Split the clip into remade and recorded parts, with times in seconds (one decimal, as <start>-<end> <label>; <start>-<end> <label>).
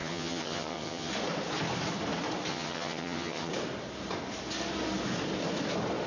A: 0.0-1.1 remade; 1.1-2.5 recorded; 2.5-3.5 remade; 3.5-6.1 recorded